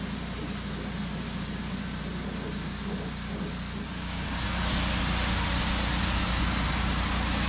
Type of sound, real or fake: real